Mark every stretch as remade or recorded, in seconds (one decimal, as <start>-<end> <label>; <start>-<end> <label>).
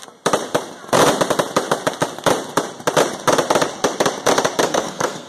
0.0-4.6 recorded; 4.6-5.3 remade